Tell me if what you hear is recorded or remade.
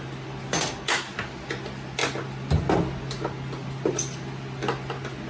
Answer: recorded